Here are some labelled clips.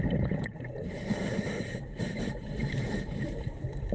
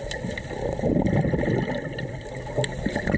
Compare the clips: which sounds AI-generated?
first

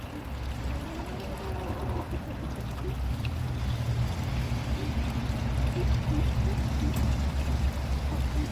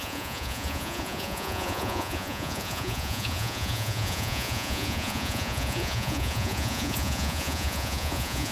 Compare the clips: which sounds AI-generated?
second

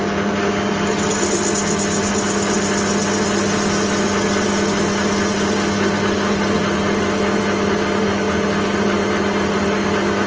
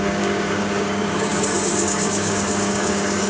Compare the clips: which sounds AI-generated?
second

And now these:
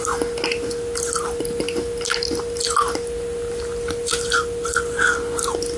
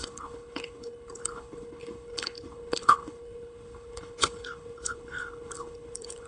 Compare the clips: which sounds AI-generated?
second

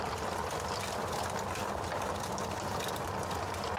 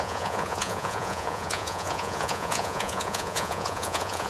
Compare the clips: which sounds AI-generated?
second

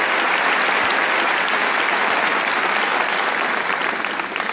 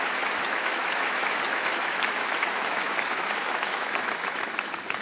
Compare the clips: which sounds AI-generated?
second